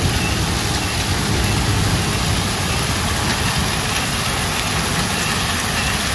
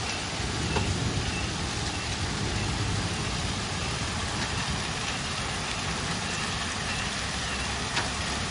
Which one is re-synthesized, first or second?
second